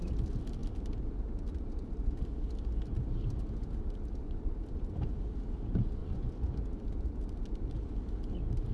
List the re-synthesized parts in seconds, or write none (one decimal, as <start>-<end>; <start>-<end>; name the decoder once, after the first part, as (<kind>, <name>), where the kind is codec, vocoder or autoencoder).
4.2-5.1 (vocoder, Vocos); 6.0-6.5